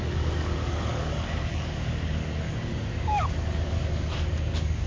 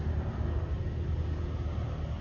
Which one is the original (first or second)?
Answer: second